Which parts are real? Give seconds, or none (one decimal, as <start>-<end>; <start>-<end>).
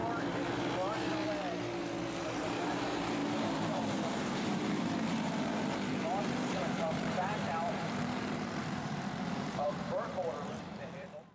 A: 0.0-2.2